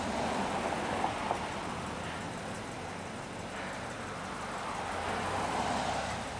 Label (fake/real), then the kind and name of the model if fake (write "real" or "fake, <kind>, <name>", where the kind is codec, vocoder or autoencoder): real